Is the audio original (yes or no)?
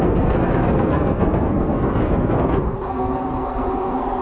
no